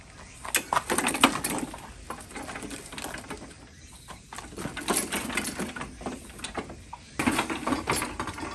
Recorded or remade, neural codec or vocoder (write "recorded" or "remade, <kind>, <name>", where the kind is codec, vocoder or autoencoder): recorded